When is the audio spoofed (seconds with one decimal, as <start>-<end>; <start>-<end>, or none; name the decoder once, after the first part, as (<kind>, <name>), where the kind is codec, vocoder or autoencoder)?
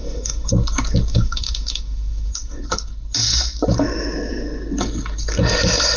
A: 0.0-0.5 (autoencoder, DAC-VAE); 1.1-2.6